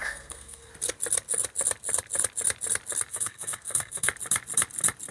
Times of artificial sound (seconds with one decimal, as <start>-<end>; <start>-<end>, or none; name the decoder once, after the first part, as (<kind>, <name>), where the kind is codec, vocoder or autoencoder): 0.0-0.7 (codec, SNAC); 3.1-4.1